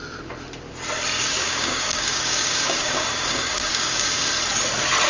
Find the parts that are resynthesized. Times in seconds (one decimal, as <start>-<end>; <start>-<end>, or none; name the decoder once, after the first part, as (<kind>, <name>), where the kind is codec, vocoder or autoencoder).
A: 1.2-4.3 (codec, DAC)